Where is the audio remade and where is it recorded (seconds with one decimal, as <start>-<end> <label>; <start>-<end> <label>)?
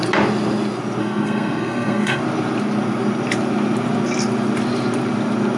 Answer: 0.0-1.0 recorded; 1.0-2.2 remade; 2.2-5.6 recorded